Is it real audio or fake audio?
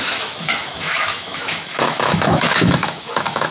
fake